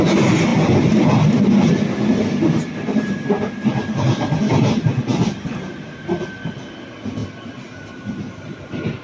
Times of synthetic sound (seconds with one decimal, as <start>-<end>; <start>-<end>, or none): none